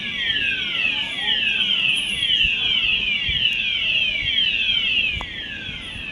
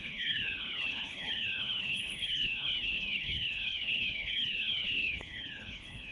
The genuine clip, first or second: first